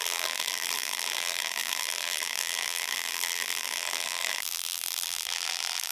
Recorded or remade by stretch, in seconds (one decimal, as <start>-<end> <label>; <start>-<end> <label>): 0.0-5.9 remade